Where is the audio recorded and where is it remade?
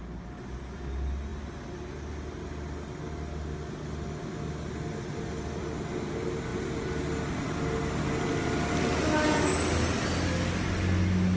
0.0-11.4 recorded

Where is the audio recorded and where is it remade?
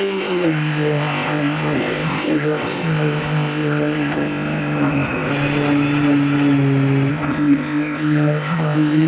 0.0-5.3 remade; 5.3-7.1 recorded; 7.1-9.1 remade